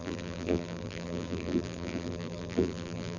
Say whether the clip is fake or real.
fake